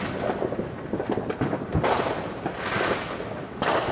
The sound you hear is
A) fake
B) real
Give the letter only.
B